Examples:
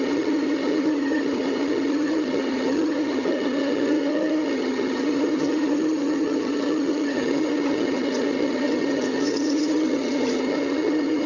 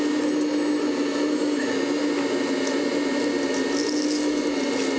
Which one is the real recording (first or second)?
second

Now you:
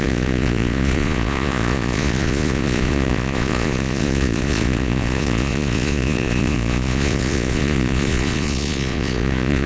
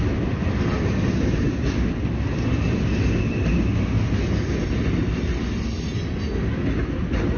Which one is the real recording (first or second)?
second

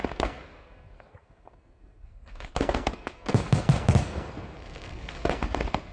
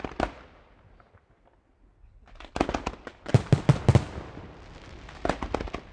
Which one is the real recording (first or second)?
second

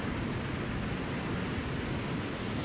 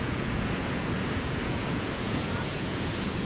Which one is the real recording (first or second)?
first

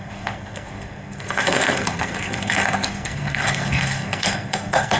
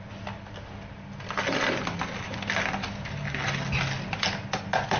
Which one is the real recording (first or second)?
second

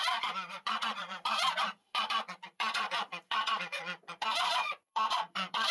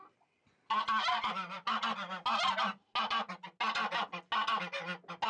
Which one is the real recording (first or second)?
second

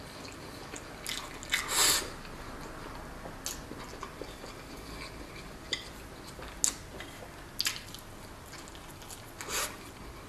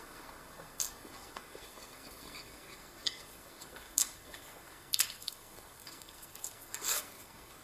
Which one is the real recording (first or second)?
first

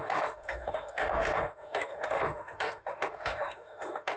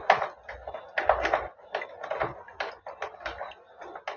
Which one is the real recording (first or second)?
second